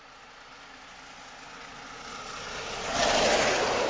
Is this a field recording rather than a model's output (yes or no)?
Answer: yes